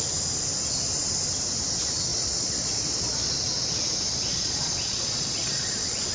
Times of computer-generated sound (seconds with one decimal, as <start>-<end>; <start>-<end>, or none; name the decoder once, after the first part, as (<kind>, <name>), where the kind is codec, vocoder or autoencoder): 2.1-3.3 (vocoder, Vocos); 4.3-6.1